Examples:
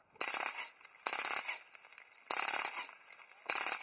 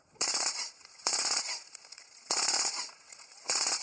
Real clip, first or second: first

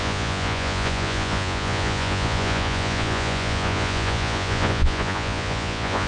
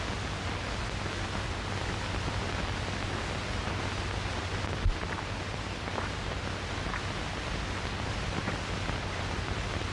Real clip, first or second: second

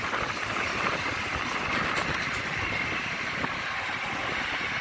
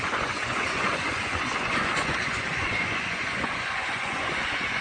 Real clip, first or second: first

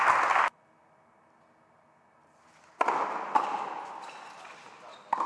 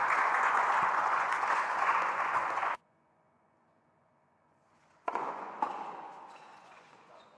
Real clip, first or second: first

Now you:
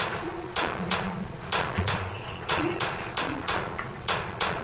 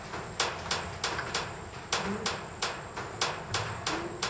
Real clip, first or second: second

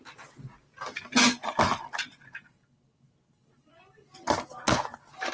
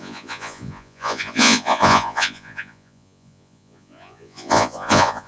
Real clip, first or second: first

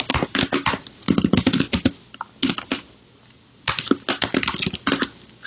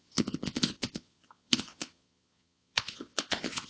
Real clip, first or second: first